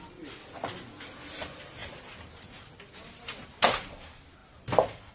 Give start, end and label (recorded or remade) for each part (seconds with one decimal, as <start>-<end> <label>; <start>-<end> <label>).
0.0-5.1 recorded